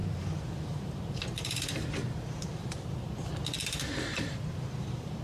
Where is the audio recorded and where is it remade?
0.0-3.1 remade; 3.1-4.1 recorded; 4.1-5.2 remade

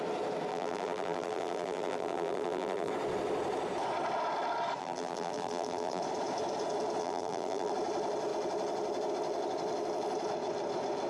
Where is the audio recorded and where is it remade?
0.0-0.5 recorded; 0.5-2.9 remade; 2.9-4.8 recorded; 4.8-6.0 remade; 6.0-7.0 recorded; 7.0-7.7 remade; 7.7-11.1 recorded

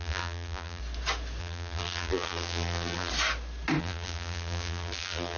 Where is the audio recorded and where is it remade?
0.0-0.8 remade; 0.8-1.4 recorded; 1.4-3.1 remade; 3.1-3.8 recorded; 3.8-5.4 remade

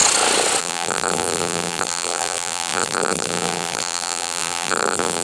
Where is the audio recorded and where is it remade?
0.0-0.6 recorded; 0.6-5.2 remade

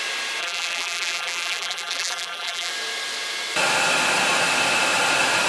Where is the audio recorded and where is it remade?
0.0-0.4 recorded; 0.4-2.7 remade; 2.7-5.5 recorded

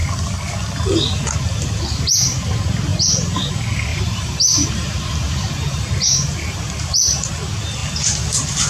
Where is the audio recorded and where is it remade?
0.0-3.9 recorded; 3.9-6.6 remade; 6.6-8.7 recorded

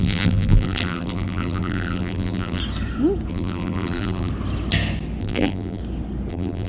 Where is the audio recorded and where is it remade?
0.0-2.6 remade; 2.6-3.3 recorded; 3.3-4.3 remade; 4.3-5.2 recorded; 5.2-5.8 remade; 5.8-6.3 recorded; 6.3-6.7 remade

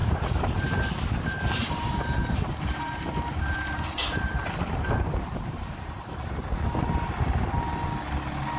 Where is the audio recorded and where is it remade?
0.0-0.8 remade; 0.8-1.6 recorded; 1.6-6.4 remade; 6.4-8.6 recorded